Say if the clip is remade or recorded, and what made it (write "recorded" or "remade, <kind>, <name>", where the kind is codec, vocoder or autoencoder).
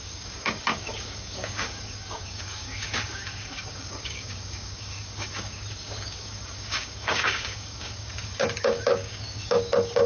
remade, codec, DAC